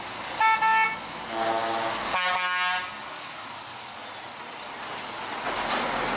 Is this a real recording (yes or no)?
yes